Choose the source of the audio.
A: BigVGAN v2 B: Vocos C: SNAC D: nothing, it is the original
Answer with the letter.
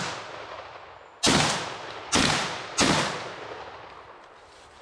D